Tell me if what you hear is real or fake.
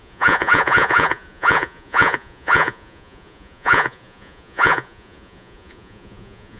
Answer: fake